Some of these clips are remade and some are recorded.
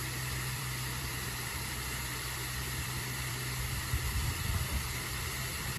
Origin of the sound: remade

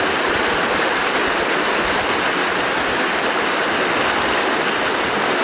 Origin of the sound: recorded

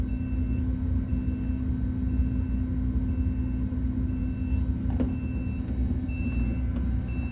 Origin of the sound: recorded